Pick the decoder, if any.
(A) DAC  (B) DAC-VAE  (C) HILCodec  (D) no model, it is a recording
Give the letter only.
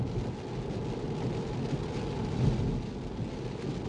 D